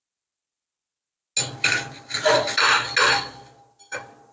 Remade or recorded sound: recorded